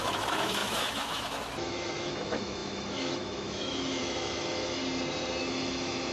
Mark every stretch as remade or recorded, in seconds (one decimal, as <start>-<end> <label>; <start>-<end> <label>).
0.0-4.8 remade; 4.8-5.4 recorded; 5.4-6.1 remade